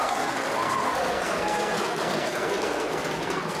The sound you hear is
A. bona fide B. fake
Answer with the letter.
B